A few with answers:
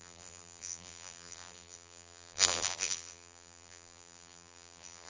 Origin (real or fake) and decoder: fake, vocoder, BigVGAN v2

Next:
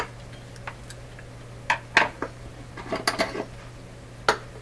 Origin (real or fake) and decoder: real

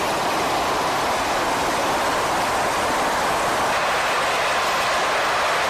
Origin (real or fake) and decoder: real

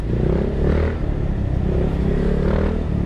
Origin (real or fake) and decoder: real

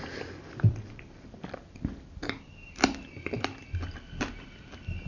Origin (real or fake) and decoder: fake, vocoder, BigVGAN v2